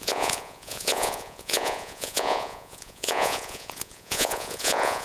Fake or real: fake